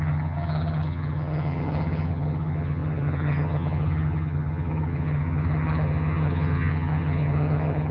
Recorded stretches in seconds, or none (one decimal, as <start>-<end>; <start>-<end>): none